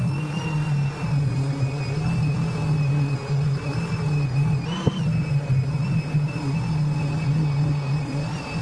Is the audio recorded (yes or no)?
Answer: yes